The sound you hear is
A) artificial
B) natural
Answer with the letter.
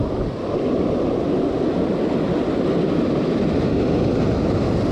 B